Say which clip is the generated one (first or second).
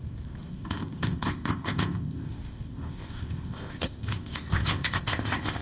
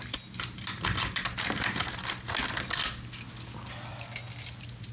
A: first